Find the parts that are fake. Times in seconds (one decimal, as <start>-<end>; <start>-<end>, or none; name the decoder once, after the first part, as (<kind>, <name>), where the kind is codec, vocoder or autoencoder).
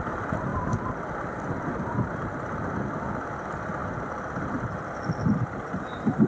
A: none